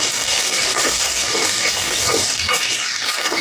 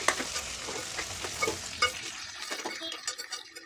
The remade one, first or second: first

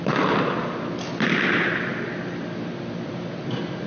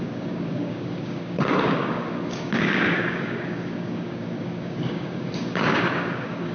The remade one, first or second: second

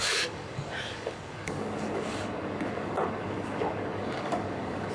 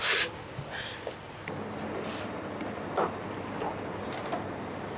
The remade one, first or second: first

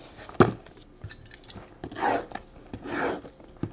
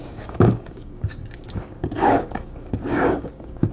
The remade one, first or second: second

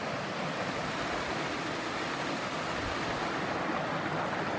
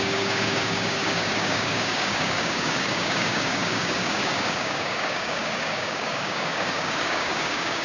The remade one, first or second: second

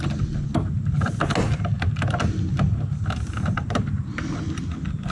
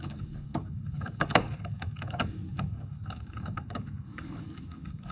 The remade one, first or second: second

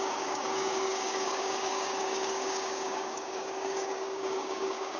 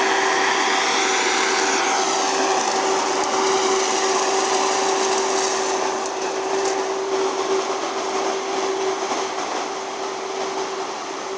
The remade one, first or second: first